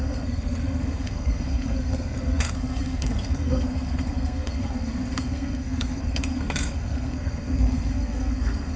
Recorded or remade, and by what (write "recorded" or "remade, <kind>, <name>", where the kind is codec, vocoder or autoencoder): remade, codec, SNAC